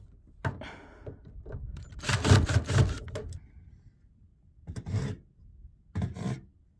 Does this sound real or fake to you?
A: real